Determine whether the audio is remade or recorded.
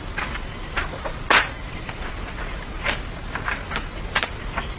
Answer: recorded